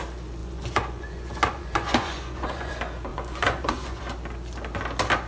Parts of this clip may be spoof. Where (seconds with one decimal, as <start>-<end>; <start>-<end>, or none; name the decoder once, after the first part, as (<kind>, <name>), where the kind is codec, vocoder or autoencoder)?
0.4-2.7 (vocoder, Vocos); 3.1-4.0

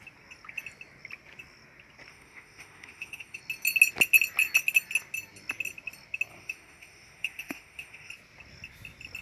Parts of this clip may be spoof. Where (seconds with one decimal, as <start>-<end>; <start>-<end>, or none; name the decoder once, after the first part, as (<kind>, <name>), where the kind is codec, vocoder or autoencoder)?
2.1-3.4 (autoencoder, DAC-VAE); 6.3-8.1